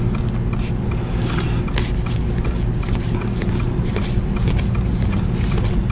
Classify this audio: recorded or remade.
recorded